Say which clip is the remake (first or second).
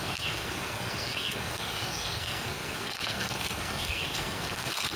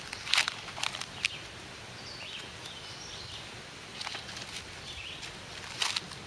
first